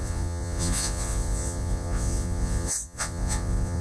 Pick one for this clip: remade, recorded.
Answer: remade